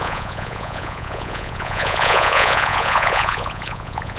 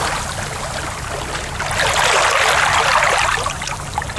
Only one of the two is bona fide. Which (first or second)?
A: second